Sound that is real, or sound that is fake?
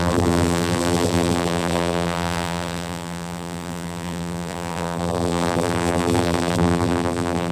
fake